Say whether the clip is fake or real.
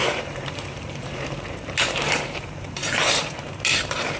fake